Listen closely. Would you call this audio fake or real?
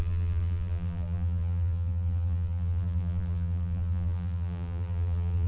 fake